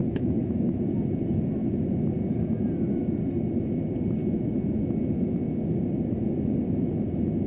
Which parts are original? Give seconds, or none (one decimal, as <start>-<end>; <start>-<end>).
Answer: 0.8-4.2; 5.5-7.5